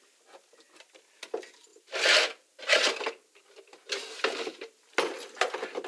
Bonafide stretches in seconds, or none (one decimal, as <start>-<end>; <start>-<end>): 0.0-5.9